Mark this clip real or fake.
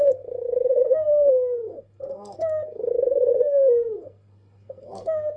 fake